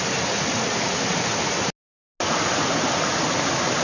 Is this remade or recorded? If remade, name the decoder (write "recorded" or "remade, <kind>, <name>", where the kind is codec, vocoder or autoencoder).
recorded